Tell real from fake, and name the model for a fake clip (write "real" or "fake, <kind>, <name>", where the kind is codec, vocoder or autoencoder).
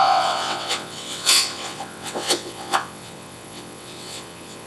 fake, vocoder, WaveNeXt